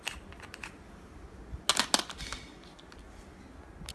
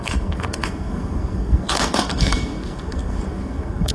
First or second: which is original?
first